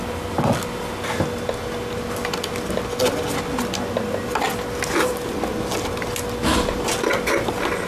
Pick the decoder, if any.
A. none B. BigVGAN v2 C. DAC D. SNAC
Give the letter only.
A